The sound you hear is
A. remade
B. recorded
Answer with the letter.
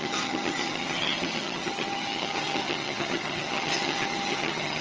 A